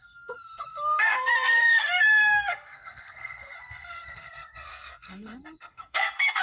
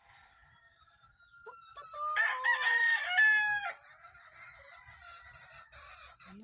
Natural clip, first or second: second